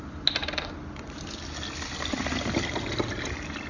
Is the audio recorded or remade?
recorded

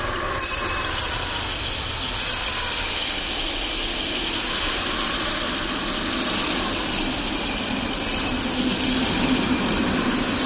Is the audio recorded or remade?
recorded